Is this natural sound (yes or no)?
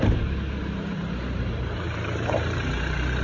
no